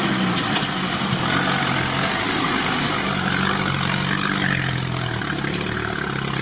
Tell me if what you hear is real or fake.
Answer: real